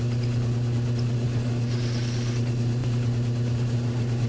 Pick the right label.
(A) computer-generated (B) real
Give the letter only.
B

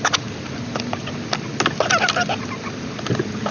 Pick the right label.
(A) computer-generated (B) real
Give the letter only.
B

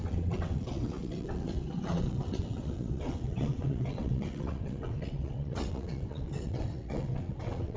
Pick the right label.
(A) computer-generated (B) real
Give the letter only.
A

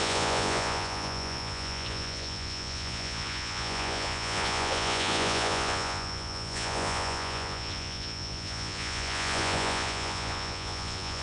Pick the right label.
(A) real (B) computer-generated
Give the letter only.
B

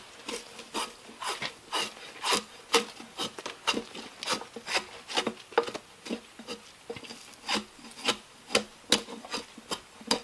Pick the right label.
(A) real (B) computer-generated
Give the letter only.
A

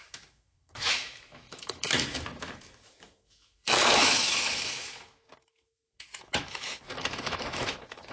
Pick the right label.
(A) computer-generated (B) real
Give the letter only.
A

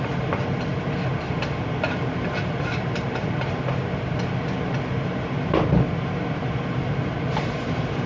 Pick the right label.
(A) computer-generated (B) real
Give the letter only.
B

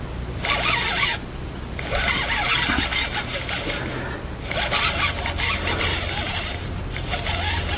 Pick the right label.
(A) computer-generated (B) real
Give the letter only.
B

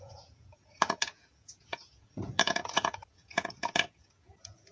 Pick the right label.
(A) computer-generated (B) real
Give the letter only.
A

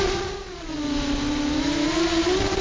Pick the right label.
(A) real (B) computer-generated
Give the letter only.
B